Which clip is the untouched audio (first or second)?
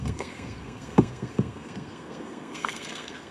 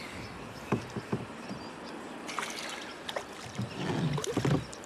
second